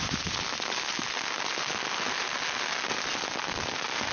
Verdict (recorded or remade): recorded